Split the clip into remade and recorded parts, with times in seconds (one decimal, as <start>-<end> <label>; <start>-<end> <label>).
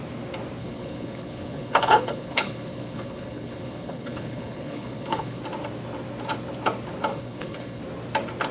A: 0.0-0.6 recorded; 0.6-5.4 remade; 5.4-7.1 recorded; 7.1-7.8 remade; 7.8-8.5 recorded